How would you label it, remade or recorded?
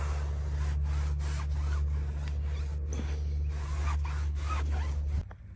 recorded